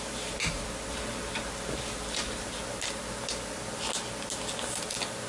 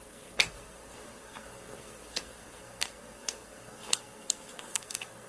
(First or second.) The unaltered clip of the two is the first